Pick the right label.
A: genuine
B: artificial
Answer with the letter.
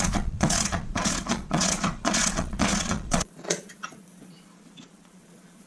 B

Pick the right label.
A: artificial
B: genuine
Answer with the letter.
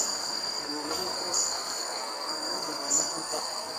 A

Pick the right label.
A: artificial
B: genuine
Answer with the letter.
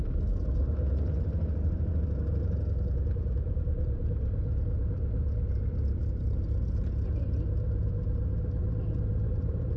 A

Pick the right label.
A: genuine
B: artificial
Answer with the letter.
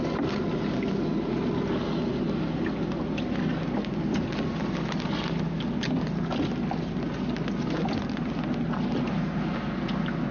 A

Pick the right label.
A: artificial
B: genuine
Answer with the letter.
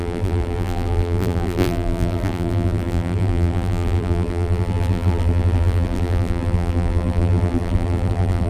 A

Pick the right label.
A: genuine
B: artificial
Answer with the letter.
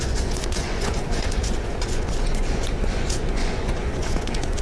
B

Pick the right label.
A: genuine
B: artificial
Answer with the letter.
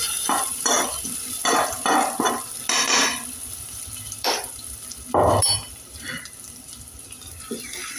B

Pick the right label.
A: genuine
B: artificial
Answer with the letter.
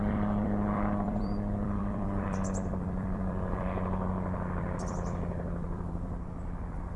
B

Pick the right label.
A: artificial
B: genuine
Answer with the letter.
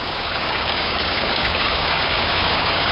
A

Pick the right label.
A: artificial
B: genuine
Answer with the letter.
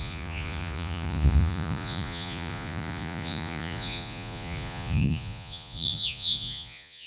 A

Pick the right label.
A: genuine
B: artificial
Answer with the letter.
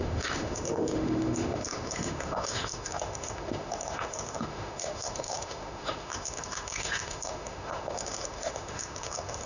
B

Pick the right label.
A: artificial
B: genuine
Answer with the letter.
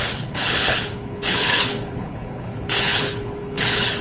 A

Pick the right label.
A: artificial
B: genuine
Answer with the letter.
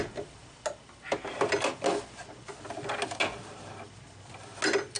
B